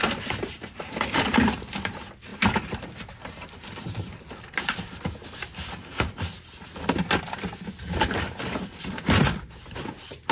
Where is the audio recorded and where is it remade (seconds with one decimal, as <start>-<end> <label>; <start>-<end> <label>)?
0.0-10.3 recorded